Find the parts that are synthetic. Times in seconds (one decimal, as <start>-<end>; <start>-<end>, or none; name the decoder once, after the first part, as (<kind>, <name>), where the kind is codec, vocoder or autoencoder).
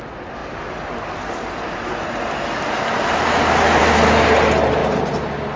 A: 4.8-5.6 (vocoder, BigVGAN v2)